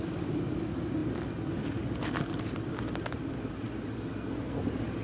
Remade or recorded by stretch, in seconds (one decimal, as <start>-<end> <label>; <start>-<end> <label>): 0.0-4.1 recorded; 4.1-4.6 remade; 4.6-5.0 recorded